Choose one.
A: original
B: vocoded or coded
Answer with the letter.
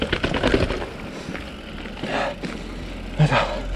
A